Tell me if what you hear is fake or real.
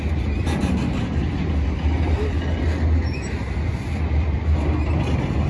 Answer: real